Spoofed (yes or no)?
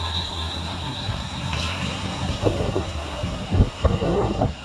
yes